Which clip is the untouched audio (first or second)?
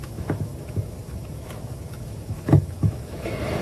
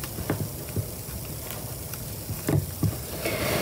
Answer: second